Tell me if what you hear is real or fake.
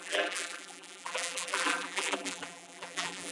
fake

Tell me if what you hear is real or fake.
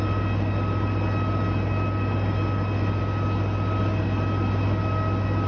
real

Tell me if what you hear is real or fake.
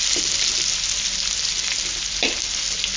real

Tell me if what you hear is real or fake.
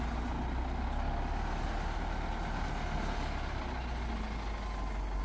real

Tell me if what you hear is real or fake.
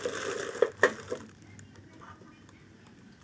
real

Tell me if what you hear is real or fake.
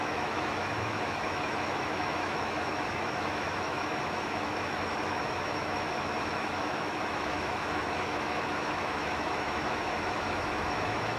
fake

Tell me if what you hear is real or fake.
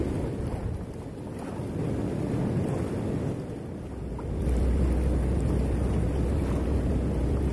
real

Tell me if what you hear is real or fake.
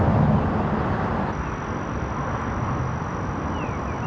real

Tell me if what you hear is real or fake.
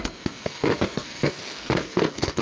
fake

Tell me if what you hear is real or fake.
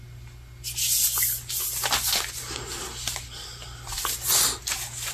real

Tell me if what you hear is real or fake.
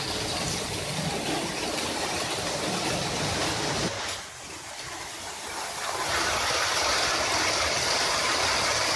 fake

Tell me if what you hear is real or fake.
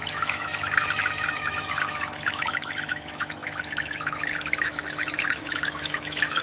fake